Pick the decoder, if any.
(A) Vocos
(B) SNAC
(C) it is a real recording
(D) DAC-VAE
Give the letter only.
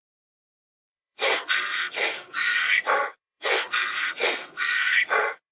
B